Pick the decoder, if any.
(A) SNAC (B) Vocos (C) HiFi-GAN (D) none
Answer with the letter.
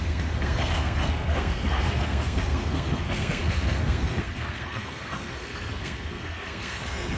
A